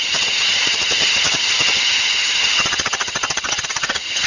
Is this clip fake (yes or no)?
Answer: yes